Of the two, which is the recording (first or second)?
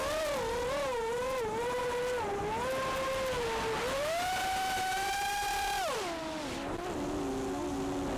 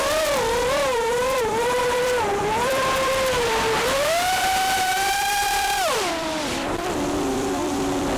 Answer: first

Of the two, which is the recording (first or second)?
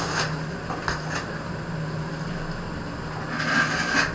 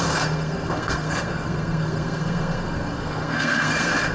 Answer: first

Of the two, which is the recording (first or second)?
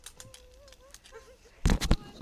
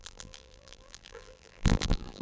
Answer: first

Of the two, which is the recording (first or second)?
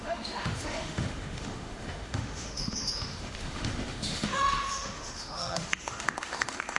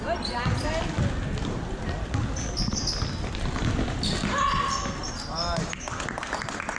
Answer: second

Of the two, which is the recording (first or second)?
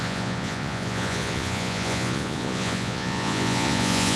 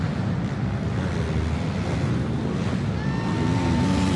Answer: second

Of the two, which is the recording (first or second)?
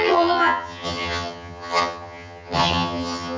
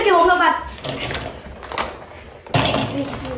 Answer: second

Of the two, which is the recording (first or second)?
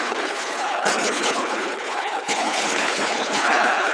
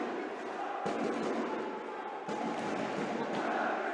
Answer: second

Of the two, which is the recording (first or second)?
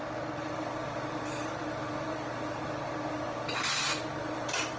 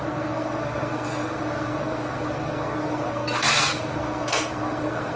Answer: first